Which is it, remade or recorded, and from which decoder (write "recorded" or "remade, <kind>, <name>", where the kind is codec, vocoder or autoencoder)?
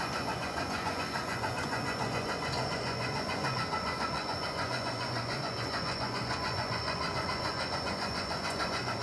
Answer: remade, vocoder, Vocos